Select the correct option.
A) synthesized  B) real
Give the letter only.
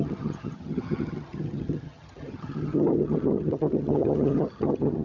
A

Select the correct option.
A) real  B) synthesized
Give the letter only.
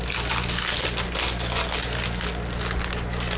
A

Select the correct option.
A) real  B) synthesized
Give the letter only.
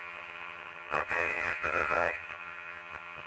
B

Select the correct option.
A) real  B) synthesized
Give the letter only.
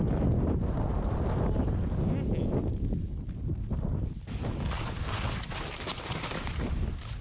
A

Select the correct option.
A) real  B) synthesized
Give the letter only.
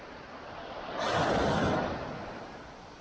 A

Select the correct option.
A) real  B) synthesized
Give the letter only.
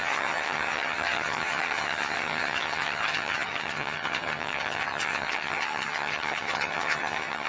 B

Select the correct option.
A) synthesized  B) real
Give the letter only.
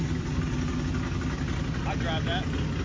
B